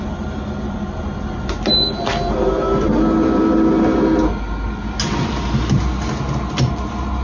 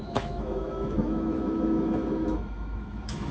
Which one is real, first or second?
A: first